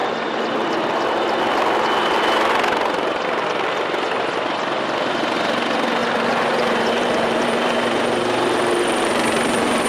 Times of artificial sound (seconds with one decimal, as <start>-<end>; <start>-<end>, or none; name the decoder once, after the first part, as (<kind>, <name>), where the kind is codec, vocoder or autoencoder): 6.0-9.9 (vocoder, BigVGAN v2)